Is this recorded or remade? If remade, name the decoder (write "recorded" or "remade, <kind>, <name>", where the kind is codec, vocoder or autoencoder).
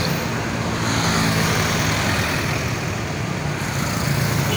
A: recorded